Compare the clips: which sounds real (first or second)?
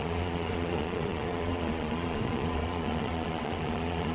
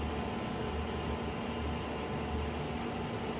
second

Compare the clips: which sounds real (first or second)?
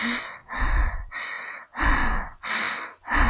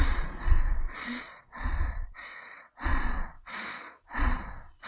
first